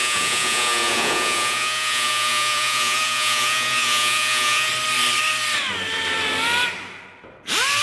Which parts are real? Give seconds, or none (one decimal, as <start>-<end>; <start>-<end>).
4.7-7.8